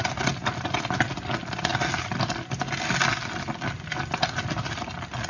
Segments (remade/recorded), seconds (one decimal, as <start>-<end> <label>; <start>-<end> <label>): 0.0-5.3 recorded